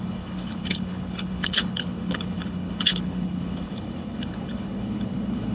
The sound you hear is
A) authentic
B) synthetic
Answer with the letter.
B